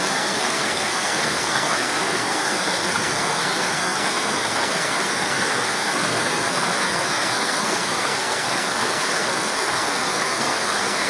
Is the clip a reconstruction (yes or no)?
yes